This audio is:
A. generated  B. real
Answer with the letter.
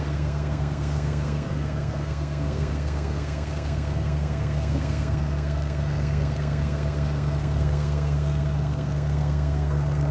A